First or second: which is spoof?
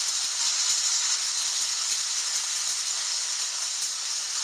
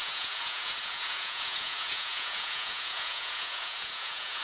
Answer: second